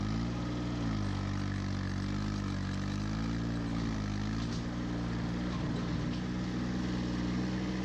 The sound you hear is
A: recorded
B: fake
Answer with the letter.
A